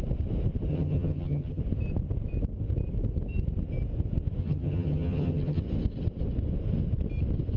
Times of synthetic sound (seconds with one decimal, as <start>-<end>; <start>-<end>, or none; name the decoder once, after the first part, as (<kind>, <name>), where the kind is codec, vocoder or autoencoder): 0.7-1.6 (vocoder, HiFi-GAN); 4.4-5.6